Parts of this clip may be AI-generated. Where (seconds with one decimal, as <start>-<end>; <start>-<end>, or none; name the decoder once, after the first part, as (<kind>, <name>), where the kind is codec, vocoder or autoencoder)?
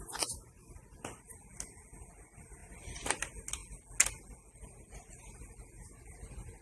none